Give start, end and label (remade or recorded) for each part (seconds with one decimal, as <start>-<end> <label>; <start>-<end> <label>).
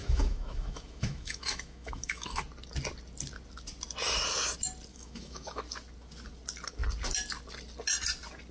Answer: 0.0-2.4 remade; 2.4-4.9 recorded; 4.9-5.6 remade; 5.6-8.5 recorded